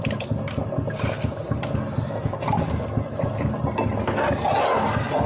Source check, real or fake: real